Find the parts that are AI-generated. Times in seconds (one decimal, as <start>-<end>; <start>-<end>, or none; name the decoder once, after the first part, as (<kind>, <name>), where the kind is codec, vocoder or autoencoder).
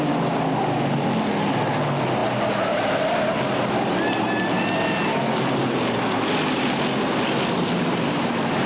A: none